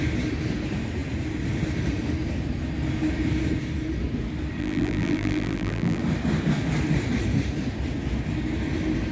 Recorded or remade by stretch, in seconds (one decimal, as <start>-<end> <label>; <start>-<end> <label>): 0.0-4.6 recorded; 4.6-6.0 remade; 6.0-9.1 recorded